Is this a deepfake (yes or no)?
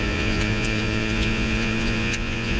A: yes